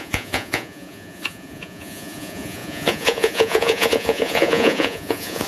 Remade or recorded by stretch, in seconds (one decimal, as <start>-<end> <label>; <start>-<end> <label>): 0.0-5.5 remade